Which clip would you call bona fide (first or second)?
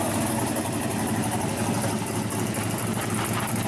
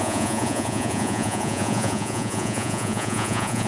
first